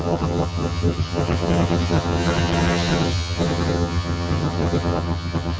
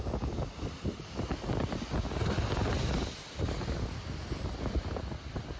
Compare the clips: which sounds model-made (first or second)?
first